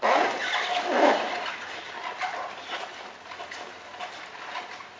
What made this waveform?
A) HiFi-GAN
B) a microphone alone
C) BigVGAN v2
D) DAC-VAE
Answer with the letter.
B